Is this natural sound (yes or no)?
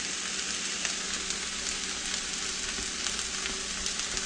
yes